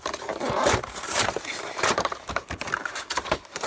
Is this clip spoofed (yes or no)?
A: yes